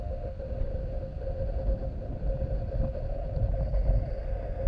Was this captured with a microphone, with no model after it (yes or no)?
yes